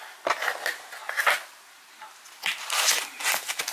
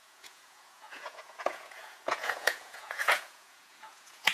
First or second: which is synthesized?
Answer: second